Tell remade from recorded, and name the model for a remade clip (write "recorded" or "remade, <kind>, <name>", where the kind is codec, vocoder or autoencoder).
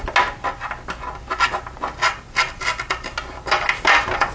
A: recorded